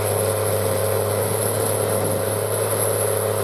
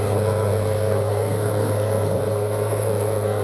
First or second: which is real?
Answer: first